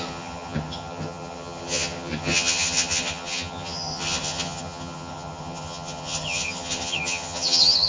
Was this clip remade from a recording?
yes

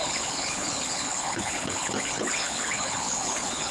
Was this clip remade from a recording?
yes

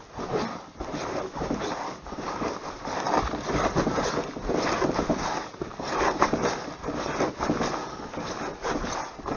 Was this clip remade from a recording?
no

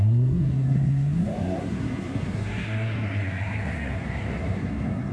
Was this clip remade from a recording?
yes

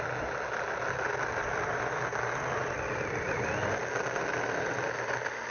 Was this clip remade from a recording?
no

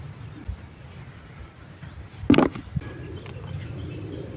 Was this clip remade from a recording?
no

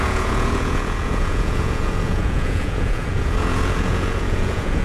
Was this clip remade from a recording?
yes